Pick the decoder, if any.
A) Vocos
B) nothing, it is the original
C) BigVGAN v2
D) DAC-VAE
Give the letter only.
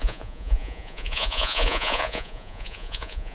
A